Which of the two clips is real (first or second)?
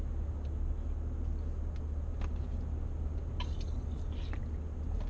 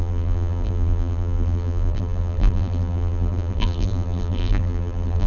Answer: first